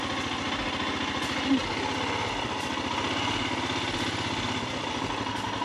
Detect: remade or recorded recorded